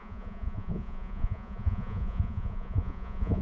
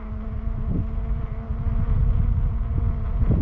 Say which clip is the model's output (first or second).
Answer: first